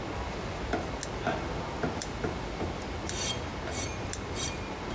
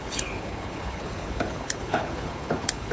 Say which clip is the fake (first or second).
second